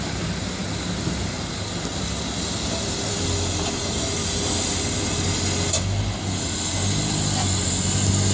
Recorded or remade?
recorded